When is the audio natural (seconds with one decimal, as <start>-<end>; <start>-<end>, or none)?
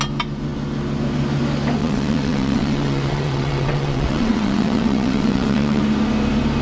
0.0-1.8; 5.8-6.6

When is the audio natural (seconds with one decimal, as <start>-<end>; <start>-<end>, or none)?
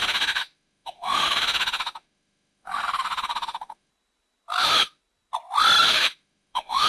3.9-4.6; 5.0-5.8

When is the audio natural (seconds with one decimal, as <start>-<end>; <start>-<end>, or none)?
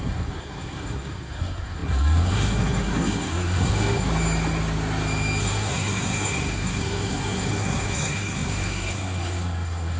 4.1-5.4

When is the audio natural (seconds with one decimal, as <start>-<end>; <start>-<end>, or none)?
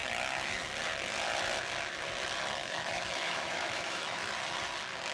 0.0-2.6; 4.3-5.1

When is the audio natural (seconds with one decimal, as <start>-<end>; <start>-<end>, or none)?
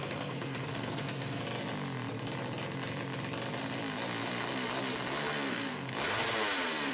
1.4-5.5; 5.9-6.9